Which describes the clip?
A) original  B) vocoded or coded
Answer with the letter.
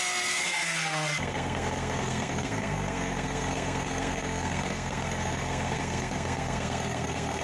B